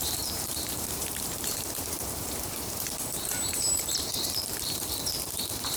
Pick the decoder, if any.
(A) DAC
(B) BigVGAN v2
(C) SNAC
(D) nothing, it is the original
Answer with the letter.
B